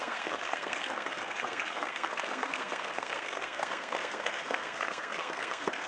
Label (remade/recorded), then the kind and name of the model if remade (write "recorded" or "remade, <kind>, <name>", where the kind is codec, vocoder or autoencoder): remade, codec, SNAC